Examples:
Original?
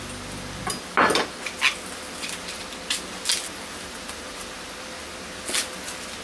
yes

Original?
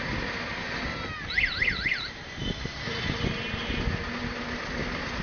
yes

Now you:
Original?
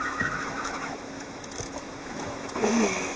no